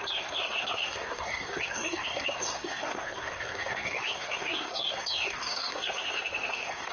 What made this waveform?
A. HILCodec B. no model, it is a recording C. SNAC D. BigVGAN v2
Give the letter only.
C